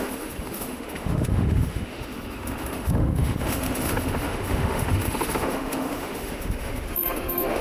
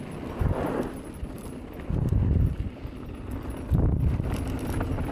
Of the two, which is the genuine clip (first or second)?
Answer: second